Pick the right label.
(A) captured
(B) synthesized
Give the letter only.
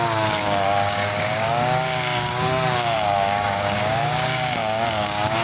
B